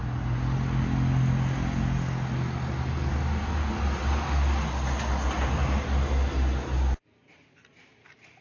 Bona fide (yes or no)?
yes